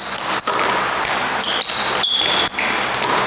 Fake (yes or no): no